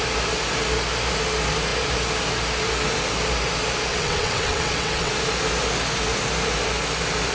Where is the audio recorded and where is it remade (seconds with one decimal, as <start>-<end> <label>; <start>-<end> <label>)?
0.0-3.9 recorded; 3.9-5.1 remade; 5.1-7.3 recorded